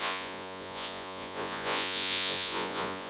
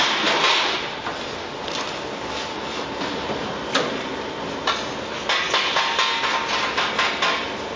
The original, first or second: second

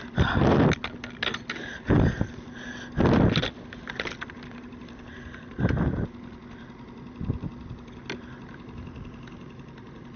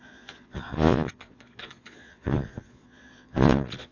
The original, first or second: first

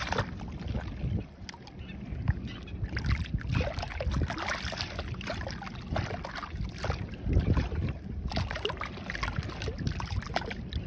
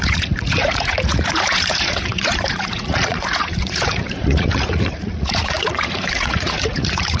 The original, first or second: first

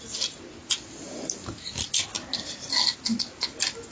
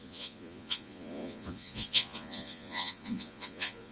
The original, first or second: first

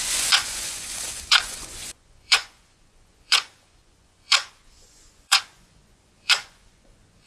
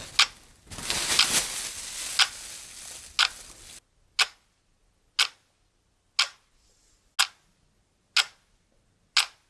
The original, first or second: second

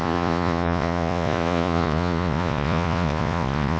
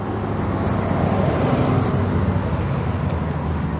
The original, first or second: second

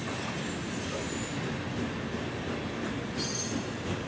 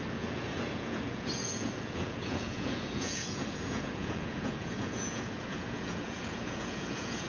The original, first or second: first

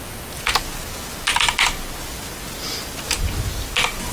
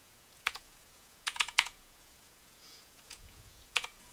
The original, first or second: first